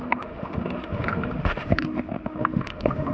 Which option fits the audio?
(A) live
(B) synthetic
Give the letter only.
B